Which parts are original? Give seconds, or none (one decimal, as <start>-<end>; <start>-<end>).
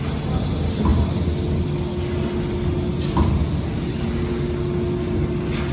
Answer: 0.0-5.7